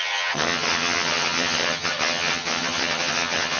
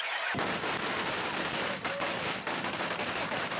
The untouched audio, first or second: second